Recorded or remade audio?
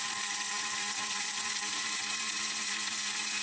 remade